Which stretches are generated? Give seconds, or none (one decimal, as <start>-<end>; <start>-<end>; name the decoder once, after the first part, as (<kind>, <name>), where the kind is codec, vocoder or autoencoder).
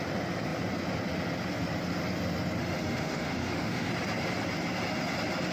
2.6-3.9 (autoencoder, DAC-VAE)